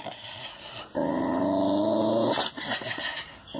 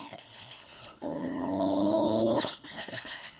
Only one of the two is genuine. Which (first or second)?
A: first